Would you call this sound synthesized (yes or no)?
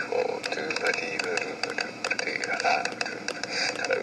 yes